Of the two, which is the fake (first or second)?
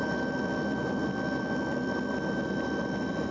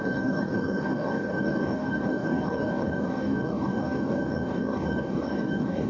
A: second